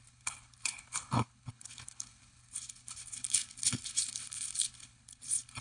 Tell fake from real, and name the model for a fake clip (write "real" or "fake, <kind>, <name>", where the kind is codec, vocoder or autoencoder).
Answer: fake, codec, HILCodec